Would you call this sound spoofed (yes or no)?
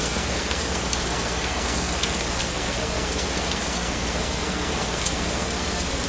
yes